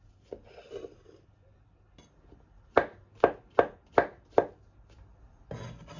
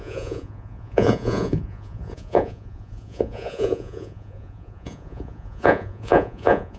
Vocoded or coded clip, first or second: second